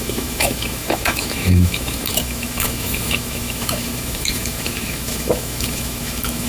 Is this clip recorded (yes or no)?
no